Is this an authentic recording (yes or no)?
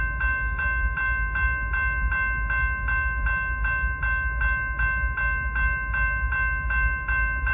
yes